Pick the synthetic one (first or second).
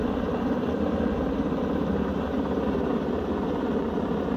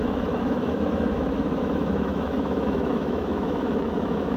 second